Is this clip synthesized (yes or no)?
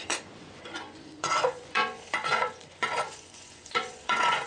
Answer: yes